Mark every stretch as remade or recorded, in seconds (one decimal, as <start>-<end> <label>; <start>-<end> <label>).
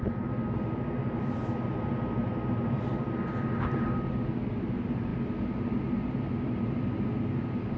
0.0-7.8 recorded